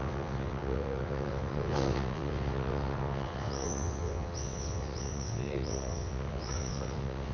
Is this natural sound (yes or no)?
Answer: no